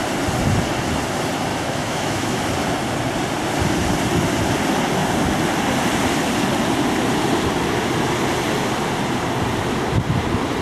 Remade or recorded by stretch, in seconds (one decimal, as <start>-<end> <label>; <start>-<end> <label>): 0.0-1.5 recorded; 1.5-2.4 remade; 2.4-10.6 recorded